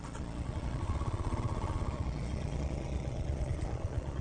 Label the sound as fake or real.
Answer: fake